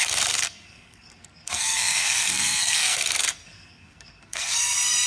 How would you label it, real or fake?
fake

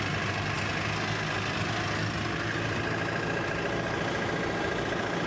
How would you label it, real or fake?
real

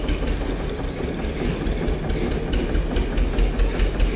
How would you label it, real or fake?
real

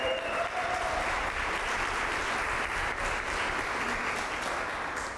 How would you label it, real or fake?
real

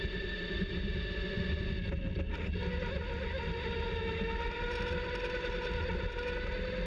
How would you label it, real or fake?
real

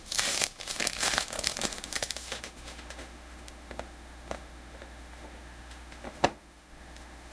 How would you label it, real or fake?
fake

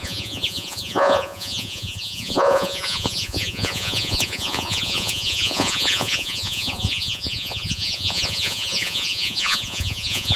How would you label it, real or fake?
fake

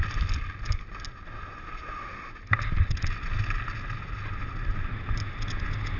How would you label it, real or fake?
real